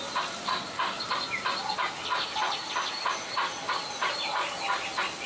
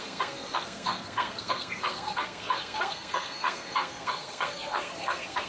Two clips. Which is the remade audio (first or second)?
second